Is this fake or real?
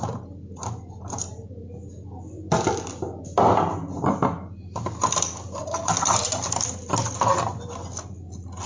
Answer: real